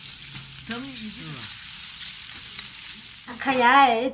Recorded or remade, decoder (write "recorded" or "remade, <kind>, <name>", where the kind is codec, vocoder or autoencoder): recorded